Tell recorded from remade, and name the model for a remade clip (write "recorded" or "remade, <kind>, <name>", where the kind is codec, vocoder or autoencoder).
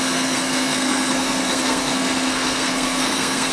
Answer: remade, codec, SNAC